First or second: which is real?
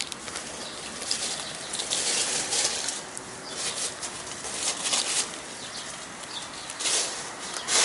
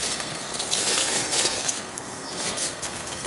first